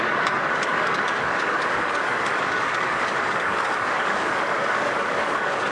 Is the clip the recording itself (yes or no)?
no